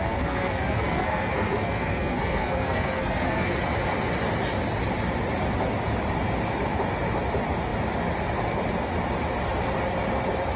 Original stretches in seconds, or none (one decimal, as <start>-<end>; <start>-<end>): 3.5-10.6